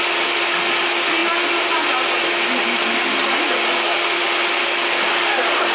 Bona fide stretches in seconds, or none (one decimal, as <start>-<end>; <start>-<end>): 0.0-5.7